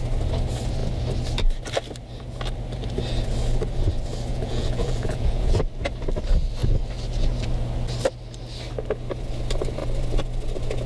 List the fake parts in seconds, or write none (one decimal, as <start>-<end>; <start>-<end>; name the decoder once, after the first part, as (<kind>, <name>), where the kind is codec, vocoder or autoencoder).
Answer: 4.3-5.6 (vocoder, Vocos)